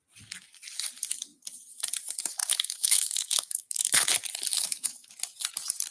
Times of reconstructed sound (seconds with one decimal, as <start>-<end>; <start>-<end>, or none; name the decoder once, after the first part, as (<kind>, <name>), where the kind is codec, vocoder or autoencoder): 2.4-4.1 (autoencoder, DAC-VAE); 4.5-5.1